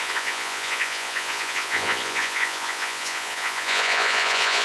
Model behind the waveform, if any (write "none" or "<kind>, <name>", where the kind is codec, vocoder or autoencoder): vocoder, Vocos